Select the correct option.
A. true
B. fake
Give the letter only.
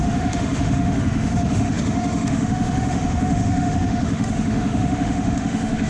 B